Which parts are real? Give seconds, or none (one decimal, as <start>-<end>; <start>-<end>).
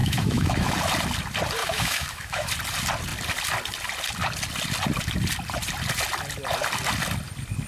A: 0.7-1.6; 2.5-7.7